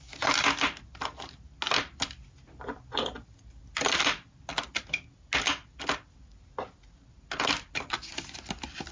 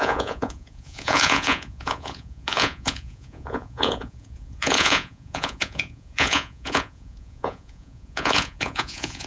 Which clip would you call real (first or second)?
first